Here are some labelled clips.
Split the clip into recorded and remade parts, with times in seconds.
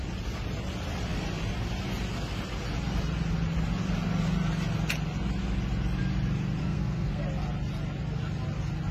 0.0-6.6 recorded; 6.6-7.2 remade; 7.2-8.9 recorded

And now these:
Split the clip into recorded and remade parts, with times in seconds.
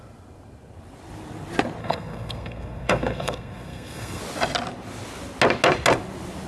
0.0-1.8 recorded; 1.8-4.2 remade; 4.2-6.5 recorded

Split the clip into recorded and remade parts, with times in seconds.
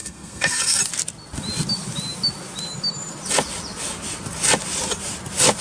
0.0-0.8 remade; 0.8-5.6 recorded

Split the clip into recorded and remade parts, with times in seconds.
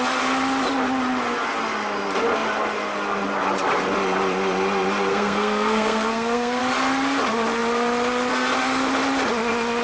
0.0-5.1 recorded; 5.1-6.6 remade; 6.6-9.8 recorded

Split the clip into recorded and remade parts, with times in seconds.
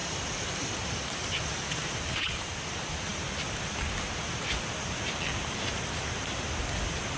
0.0-7.2 recorded